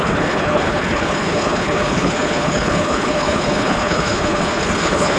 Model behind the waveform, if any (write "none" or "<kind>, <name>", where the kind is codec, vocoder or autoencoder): codec, HILCodec